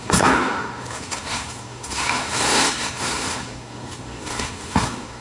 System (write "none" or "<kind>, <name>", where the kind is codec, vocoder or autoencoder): codec, SNAC